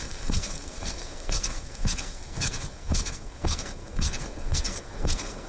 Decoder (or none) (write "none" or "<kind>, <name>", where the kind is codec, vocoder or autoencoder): codec, SNAC